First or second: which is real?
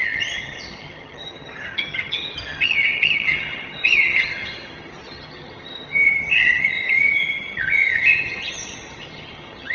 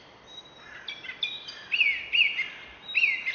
second